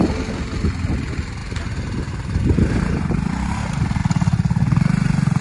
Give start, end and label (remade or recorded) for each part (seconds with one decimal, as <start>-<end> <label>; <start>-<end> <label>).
0.0-5.4 recorded